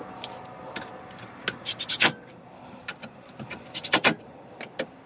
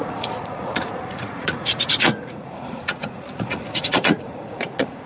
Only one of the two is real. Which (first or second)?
first